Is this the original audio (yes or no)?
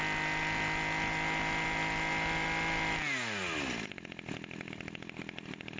yes